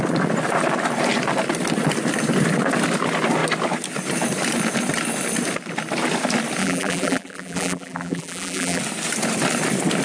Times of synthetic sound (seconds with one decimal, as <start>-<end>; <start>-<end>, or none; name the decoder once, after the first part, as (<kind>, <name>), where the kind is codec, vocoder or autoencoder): 6.6-8.8 (vocoder, BigVGAN v2)